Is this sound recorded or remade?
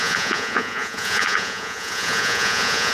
remade